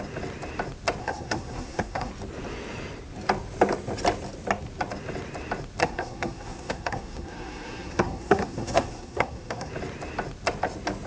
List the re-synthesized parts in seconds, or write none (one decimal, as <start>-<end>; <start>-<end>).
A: 1.0-2.1; 5.8-9.7